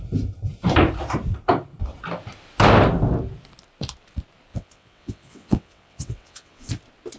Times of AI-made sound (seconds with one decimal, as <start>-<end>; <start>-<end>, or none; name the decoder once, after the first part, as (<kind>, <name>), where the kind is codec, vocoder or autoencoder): 4.5-6.7 (vocoder, WaveNeXt)